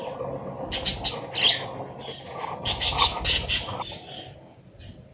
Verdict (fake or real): real